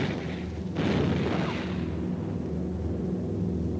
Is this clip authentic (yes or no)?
yes